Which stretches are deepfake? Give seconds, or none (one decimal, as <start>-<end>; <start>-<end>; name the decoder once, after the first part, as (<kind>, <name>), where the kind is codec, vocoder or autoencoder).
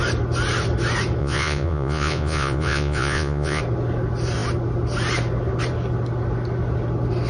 1.2-3.6 (vocoder, Vocos)